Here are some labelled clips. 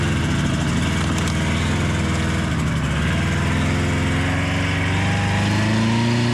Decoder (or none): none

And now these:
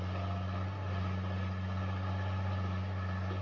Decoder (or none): none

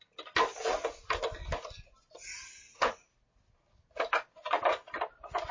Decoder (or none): none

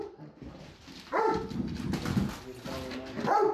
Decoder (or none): none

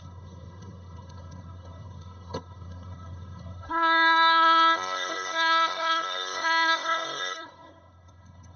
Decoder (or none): codec, SNAC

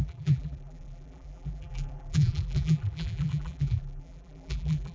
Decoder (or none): vocoder, BigVGAN v2